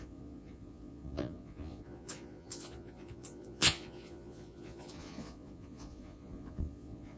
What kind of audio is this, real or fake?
fake